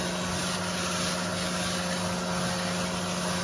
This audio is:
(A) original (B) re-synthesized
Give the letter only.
A